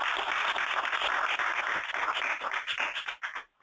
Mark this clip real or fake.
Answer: real